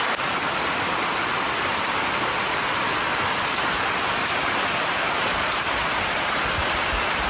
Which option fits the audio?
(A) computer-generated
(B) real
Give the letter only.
B